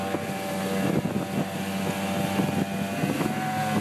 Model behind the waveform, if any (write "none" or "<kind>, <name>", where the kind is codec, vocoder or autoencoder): none